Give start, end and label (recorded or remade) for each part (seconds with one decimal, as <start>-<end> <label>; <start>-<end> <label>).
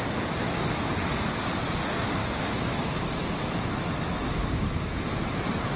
0.0-2.2 recorded; 2.2-5.1 remade; 5.1-5.8 recorded